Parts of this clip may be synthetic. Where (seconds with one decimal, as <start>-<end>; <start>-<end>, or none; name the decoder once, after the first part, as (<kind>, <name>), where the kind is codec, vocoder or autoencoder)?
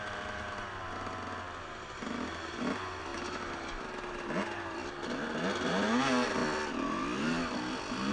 none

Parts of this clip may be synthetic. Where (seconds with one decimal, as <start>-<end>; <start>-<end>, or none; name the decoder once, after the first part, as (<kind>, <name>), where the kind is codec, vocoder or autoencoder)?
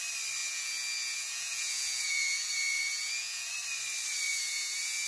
0.4-3.5 (vocoder, Vocos); 4.3-5.1